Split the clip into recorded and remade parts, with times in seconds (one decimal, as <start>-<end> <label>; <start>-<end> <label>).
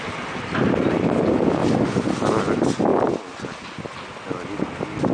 0.0-5.1 recorded